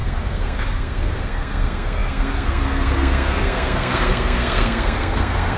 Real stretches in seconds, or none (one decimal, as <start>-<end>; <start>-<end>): none